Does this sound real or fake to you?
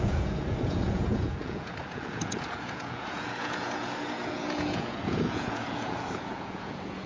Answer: fake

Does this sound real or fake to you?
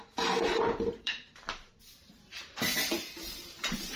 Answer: fake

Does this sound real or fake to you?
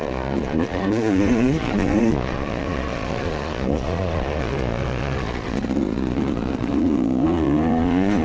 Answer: fake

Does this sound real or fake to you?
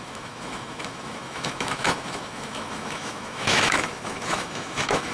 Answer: fake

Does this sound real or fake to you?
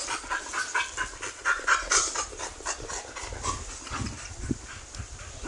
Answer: real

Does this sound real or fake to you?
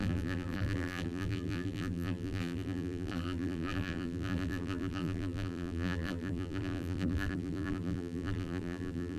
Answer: fake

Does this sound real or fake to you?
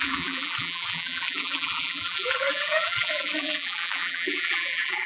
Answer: fake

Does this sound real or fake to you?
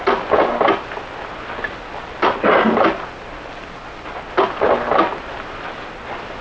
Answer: real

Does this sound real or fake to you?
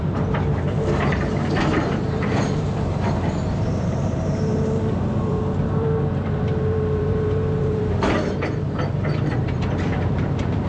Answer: fake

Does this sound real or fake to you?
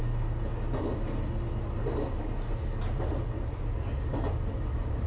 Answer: real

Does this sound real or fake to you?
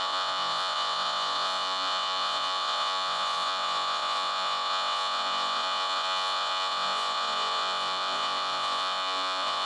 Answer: fake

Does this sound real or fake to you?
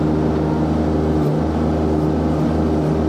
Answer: real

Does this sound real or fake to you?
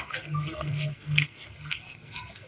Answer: fake